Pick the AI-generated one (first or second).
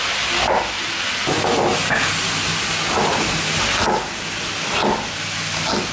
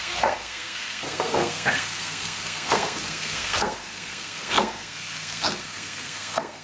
second